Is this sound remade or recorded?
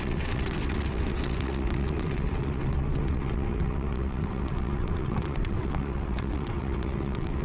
remade